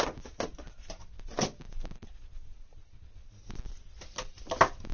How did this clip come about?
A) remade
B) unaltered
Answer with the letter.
B